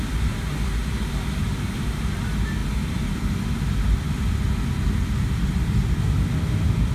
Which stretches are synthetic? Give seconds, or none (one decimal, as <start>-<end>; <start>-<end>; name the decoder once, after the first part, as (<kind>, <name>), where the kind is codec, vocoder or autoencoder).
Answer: none